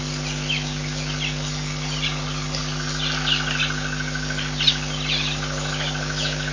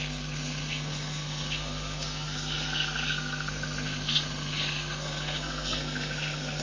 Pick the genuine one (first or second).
first